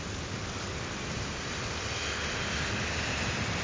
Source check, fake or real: real